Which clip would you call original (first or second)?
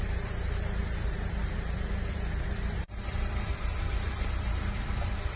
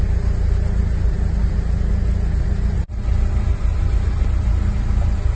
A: second